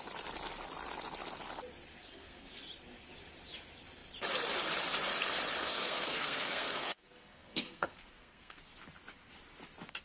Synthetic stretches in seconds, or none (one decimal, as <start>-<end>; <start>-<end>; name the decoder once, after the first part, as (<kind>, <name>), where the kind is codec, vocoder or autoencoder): 2.0-2.6 (codec, SNAC); 5.6-8.6